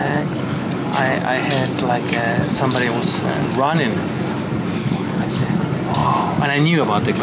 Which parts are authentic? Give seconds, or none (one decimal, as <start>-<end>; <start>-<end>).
0.6-4.8; 5.6-7.2